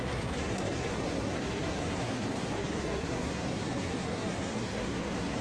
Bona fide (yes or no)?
no